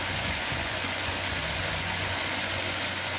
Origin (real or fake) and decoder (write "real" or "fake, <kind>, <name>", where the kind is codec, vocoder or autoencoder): fake, vocoder, Vocos